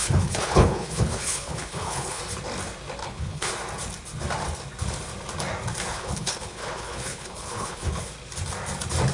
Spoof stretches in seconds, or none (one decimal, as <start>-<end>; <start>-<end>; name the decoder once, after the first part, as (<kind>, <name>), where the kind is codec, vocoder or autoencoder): 0.0-2.2 (codec, HILCodec); 3.0-3.5; 5.9-8.1